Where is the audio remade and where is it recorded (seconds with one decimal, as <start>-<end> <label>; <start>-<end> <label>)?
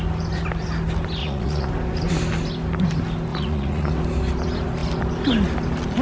0.0-1.2 recorded; 1.2-1.7 remade; 1.7-3.3 recorded; 3.3-3.9 remade; 3.9-6.0 recorded